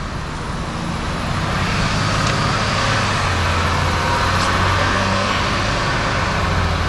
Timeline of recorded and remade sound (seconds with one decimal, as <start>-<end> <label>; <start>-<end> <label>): 0.0-4.8 recorded; 4.8-5.4 remade; 5.4-6.9 recorded